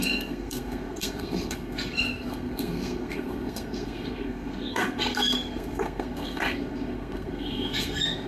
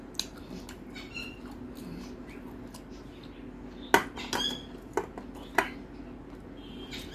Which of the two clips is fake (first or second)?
first